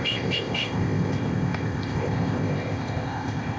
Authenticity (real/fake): fake